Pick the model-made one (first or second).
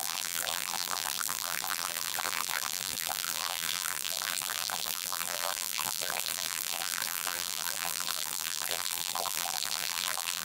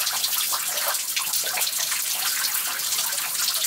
first